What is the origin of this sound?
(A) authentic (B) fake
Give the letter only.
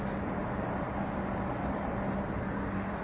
A